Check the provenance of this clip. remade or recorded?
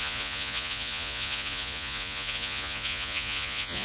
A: remade